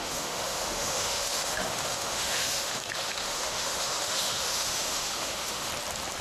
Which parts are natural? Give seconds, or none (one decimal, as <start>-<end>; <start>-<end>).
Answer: 5.7-6.2